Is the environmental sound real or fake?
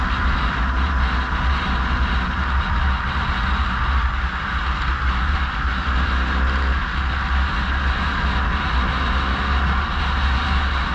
real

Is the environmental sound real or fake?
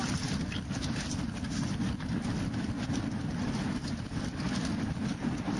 real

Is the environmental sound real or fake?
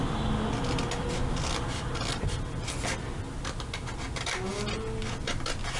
real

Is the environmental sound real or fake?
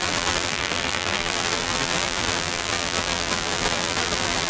fake